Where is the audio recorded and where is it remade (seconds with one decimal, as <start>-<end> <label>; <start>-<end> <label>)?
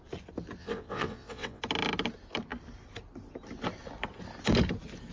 0.0-0.6 recorded; 0.6-1.6 remade; 1.6-5.1 recorded